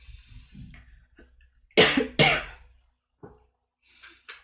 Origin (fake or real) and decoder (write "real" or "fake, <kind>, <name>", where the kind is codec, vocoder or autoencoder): real